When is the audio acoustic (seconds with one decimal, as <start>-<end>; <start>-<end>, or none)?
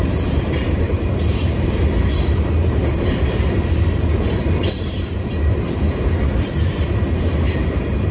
none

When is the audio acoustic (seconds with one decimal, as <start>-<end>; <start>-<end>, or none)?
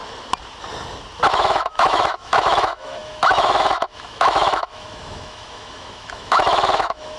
0.0-1.3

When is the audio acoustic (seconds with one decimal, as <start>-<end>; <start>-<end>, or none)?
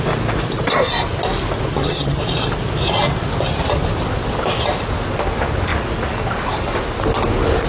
0.0-1.7; 2.2-7.7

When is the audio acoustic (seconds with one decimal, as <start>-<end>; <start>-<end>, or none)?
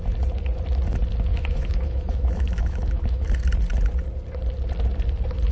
0.0-1.3; 3.3-5.5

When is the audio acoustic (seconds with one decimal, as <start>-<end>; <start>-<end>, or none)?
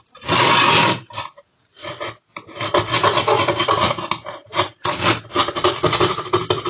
0.0-6.7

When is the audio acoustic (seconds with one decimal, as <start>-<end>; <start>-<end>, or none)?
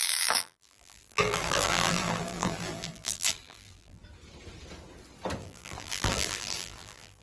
4.0-5.4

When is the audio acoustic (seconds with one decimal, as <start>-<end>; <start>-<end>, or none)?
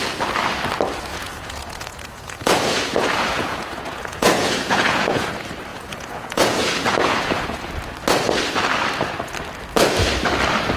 0.0-1.1; 5.3-5.7; 7.7-10.8